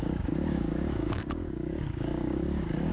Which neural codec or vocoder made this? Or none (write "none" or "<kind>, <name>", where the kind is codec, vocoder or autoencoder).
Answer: codec, DAC